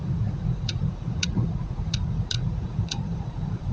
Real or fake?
fake